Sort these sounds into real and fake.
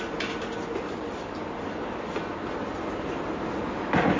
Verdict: real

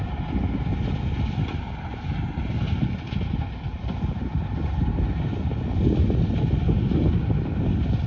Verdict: real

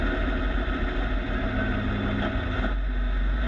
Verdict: real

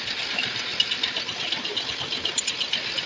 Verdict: real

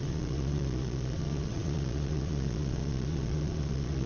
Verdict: fake